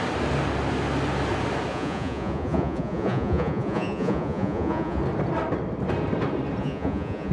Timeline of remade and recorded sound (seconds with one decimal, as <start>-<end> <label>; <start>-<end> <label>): 0.0-1.7 recorded; 1.7-5.0 remade; 5.0-6.6 recorded; 6.6-7.3 remade